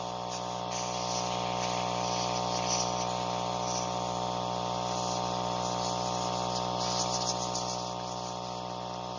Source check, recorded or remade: recorded